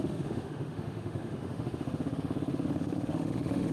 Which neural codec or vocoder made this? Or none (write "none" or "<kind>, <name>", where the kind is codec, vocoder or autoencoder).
autoencoder, DAC-VAE